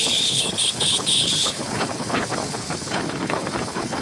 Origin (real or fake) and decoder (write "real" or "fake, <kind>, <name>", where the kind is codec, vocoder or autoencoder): fake, codec, HILCodec